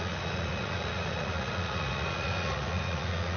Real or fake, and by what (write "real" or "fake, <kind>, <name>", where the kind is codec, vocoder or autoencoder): fake, vocoder, Vocos